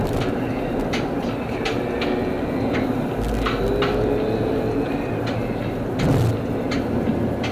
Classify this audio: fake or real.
real